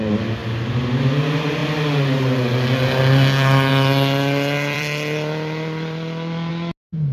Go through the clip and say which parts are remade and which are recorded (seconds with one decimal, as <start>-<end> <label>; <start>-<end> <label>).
0.0-3.7 recorded; 3.7-6.5 remade; 6.5-7.1 recorded